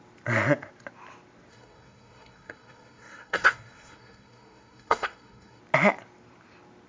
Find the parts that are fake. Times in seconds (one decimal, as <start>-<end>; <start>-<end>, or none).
1.5-5.6